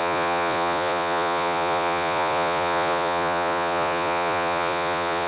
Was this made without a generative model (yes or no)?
no